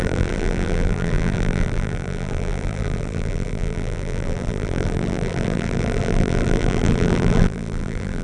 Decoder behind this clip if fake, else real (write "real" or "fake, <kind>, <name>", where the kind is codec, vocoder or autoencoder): fake, vocoder, BigVGAN v2